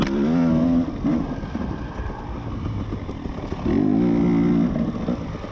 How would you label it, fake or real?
real